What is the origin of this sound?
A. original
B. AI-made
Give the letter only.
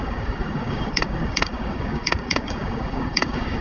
B